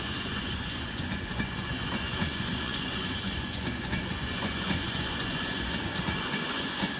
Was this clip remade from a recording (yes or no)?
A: yes